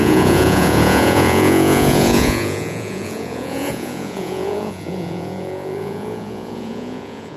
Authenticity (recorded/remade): remade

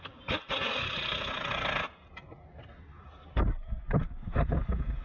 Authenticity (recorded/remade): recorded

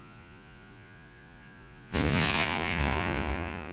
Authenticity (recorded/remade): remade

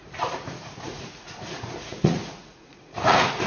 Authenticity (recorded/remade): remade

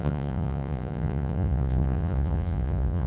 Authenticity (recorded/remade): remade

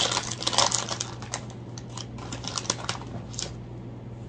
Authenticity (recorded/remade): recorded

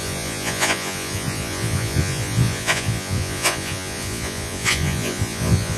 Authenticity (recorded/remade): remade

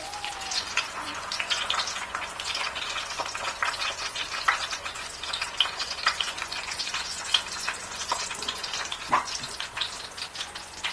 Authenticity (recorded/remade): remade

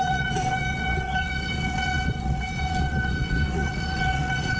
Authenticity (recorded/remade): remade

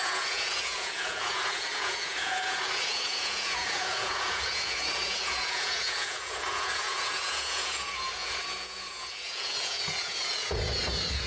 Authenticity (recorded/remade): remade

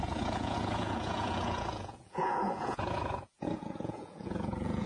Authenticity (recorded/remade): remade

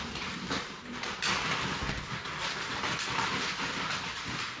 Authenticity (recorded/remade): recorded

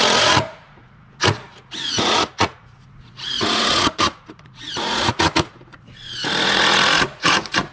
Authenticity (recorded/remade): remade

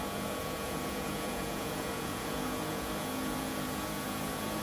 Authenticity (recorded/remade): remade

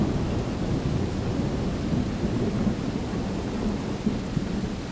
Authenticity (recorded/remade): recorded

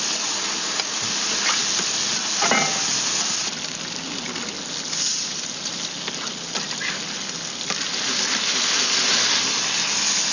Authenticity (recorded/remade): recorded